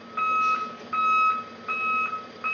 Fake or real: real